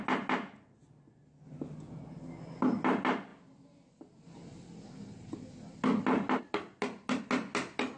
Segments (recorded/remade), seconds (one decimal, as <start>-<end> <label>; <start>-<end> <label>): 0.0-8.0 recorded